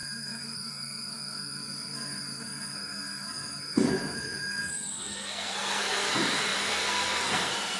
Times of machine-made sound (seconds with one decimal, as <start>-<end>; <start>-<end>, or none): 0.0-7.8